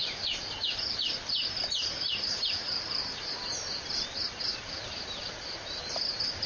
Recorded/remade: remade